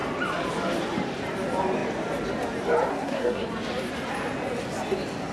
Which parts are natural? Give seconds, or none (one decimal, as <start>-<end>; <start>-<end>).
0.0-2.9; 3.5-5.3